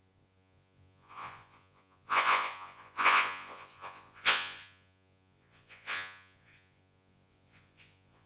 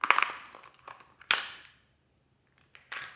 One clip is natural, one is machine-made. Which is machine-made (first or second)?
first